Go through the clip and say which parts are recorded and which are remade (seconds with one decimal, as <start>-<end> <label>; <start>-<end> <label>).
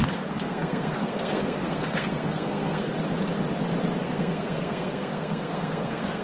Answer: 0.0-2.9 remade; 2.9-4.0 recorded; 4.0-6.2 remade